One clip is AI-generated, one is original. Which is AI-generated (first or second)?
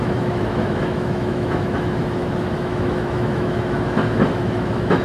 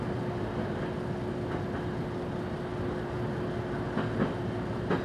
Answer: first